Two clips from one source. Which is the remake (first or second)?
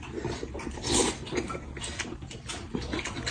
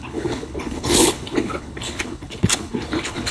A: second